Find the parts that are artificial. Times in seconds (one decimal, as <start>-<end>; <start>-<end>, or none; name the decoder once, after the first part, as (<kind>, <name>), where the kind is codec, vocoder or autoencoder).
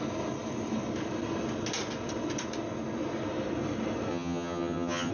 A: 4.1-5.1 (vocoder, HiFi-GAN)